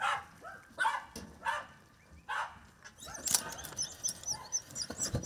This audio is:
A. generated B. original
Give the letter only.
B